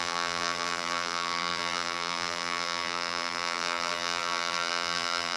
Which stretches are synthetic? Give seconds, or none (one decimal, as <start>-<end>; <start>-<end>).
0.0-5.4